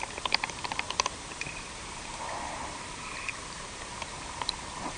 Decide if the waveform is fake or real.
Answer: fake